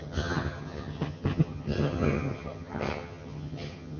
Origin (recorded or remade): remade